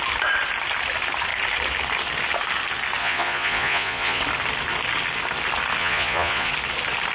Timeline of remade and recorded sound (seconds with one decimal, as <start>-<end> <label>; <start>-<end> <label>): 0.0-3.0 recorded; 3.0-4.2 remade; 4.2-5.8 recorded; 5.8-6.5 remade; 6.5-7.1 recorded